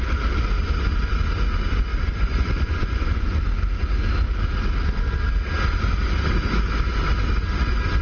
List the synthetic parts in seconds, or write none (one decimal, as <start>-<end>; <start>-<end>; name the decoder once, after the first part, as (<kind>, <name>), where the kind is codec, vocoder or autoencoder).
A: 1.9-3.4 (vocoder, Vocos)